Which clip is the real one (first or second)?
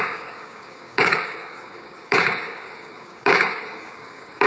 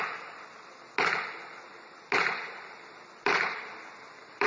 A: second